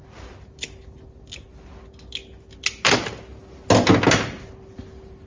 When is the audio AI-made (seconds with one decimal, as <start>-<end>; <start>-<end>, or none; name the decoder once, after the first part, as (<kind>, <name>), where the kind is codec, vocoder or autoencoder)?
none